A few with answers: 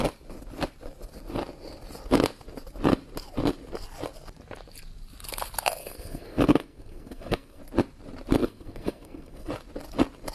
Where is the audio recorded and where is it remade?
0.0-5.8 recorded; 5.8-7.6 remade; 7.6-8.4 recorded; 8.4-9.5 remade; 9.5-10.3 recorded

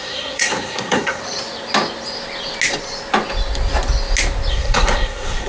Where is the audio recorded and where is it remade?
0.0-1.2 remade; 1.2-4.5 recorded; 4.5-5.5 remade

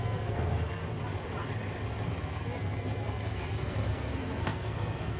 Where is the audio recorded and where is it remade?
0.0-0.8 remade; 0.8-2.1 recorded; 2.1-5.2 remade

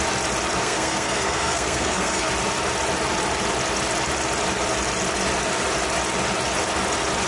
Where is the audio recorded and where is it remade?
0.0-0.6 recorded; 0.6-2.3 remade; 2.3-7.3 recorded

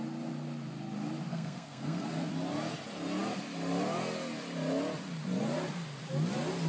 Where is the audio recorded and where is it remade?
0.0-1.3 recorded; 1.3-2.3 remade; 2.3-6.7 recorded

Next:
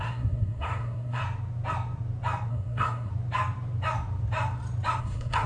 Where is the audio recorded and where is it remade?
0.0-1.2 remade; 1.2-2.5 recorded; 2.5-3.1 remade; 3.1-5.0 recorded; 5.0-5.5 remade

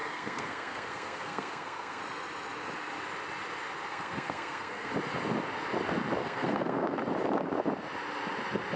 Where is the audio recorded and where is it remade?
0.0-2.0 remade; 2.0-3.9 recorded; 3.9-4.9 remade; 4.9-6.2 recorded; 6.2-7.0 remade; 7.0-8.8 recorded

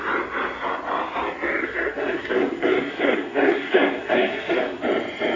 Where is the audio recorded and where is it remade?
0.0-1.6 recorded; 1.6-4.8 remade; 4.8-5.4 recorded